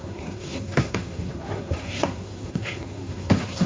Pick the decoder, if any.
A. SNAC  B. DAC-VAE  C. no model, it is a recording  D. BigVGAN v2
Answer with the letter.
A